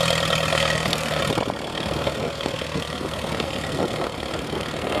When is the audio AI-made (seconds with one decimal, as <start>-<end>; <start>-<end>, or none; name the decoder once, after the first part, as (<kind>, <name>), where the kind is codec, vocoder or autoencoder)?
0.5-1.2 (codec, SNAC); 1.7-5.0